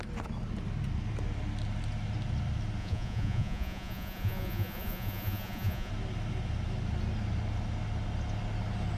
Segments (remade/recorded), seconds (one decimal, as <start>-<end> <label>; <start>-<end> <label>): 0.0-2.8 recorded; 2.8-5.9 remade; 5.9-9.0 recorded